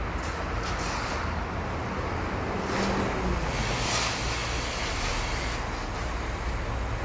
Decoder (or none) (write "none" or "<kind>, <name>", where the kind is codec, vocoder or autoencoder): none